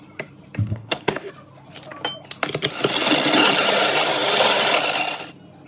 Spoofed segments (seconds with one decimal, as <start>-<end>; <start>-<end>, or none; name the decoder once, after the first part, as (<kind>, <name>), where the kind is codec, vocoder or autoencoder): 0.7-1.3 (codec, HILCodec)